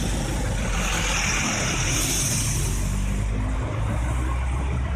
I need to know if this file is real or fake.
real